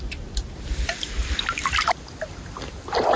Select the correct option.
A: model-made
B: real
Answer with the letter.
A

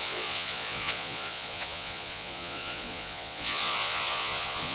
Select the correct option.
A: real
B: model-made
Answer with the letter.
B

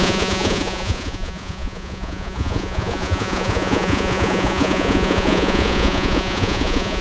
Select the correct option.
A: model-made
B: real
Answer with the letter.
A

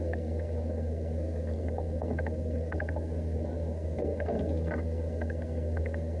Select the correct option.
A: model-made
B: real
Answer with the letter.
A